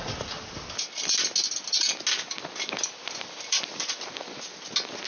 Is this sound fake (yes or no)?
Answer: no